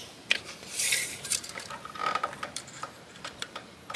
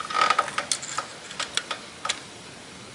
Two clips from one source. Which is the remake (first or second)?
first